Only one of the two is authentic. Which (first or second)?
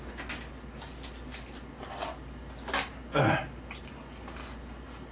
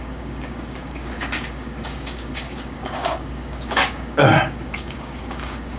first